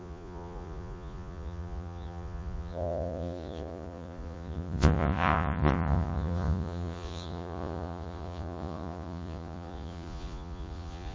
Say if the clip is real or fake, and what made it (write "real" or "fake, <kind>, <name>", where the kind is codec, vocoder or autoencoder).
fake, vocoder, Vocos